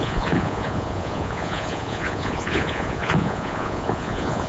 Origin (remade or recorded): remade